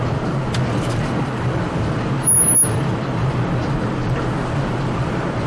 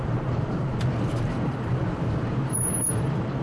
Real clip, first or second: first